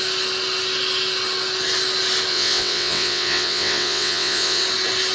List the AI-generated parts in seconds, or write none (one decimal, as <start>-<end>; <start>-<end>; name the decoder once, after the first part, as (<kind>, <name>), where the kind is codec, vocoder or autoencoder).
2.3-4.6 (vocoder, WaveNeXt)

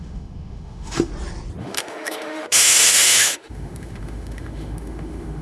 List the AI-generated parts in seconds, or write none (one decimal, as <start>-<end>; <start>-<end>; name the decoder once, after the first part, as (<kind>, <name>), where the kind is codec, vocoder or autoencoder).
0.0-1.1 (autoencoder, DAC-VAE); 1.6-5.4

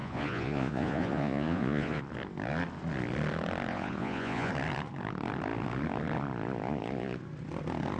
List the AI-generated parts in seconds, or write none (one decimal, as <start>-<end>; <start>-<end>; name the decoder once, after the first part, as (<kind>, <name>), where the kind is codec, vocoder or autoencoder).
0.0-2.0 (vocoder, Vocos); 3.7-4.5

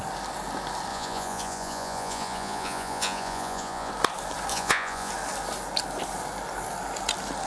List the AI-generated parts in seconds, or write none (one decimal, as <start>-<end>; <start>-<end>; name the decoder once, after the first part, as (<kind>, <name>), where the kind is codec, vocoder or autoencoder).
0.9-3.9 (vocoder, Vocos); 4.5-5.1

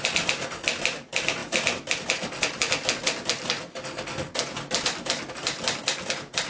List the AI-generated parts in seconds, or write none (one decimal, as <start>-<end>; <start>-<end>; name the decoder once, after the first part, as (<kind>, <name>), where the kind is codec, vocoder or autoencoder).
0.0-1.4 (vocoder, BigVGAN v2); 5.3-6.5

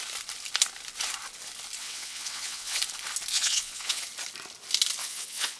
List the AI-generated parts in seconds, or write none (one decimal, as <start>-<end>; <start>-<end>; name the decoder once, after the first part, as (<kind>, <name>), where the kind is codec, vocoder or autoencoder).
1.8-2.8 (vocoder, WaveNeXt); 3.3-4.0; 5.0-5.6

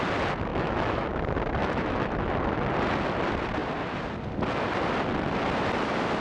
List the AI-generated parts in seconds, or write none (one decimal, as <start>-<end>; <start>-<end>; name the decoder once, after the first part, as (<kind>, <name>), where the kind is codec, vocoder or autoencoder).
0.5-1.2 (autoencoder, DAC-VAE); 1.6-2.7

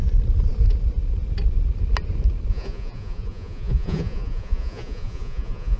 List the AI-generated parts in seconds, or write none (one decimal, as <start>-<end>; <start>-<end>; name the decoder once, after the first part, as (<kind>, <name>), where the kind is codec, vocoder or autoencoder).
2.5-5.8 (vocoder, Vocos)